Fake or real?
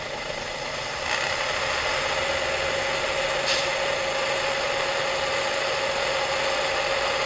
real